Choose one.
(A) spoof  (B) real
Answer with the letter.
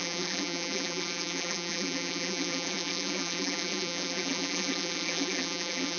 A